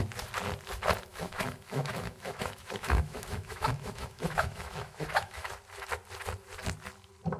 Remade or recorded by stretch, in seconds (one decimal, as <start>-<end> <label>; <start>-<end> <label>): 0.0-1.1 recorded; 1.1-5.5 remade; 5.5-7.4 recorded